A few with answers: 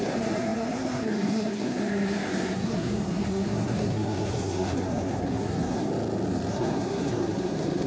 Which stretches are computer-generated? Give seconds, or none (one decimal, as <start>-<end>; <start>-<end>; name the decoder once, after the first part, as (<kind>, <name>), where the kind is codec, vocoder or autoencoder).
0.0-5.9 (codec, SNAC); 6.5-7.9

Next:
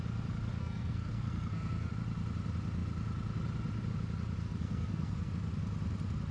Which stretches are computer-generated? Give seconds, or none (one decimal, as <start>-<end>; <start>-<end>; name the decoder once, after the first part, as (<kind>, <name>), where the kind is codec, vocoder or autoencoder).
0.6-1.9 (codec, SNAC); 4.4-5.3

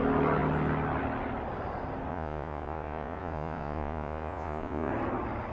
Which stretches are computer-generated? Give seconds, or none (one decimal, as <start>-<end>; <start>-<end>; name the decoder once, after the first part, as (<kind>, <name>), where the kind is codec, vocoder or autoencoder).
2.1-4.9 (vocoder, Vocos)